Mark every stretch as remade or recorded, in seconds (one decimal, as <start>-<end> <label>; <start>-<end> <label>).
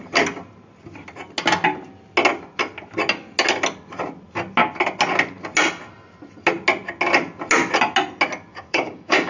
0.0-8.5 recorded; 8.5-9.3 remade